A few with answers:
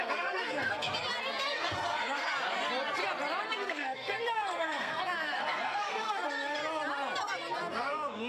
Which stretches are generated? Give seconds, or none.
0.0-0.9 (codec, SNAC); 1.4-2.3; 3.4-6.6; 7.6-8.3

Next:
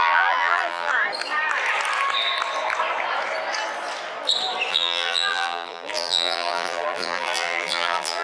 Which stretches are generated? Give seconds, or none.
0.0-0.9 (vocoder, BigVGAN v2); 4.7-8.2

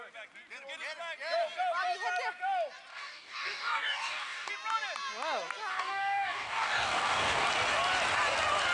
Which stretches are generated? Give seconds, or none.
2.9-4.5 (codec, DAC); 5.7-7.5

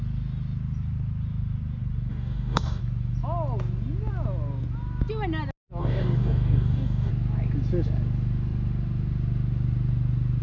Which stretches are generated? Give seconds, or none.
2.1-2.8 (codec, DAC); 5.8-7.1

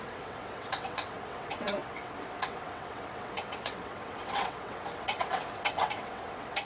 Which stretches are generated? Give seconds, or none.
0.0-6.6 (vocoder, WaveNeXt)

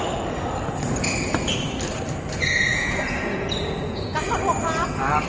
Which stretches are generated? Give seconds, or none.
2.7-4.3 (vocoder, Vocos)